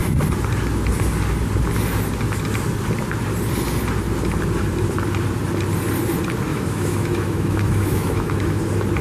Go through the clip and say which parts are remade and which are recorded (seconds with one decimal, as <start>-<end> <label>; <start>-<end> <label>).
0.0-6.5 recorded; 6.5-8.6 remade; 8.6-9.0 recorded